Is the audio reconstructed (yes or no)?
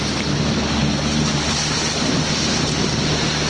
no